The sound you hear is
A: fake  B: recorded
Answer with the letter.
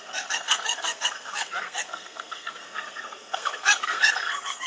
A